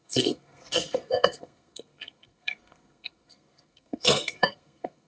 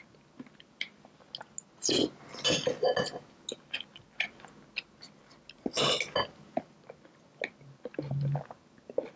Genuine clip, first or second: second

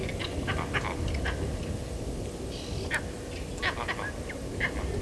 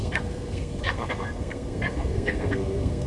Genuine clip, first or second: first